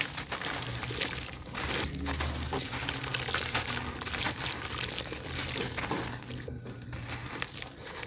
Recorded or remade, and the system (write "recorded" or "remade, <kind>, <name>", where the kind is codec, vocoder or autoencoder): recorded